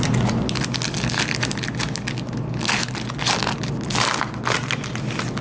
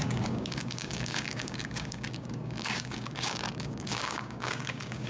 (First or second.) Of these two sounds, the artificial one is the second